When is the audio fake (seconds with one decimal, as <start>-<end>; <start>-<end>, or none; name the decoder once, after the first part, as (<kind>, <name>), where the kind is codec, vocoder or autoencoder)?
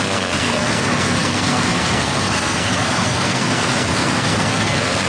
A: 0.0-5.1 (codec, SNAC)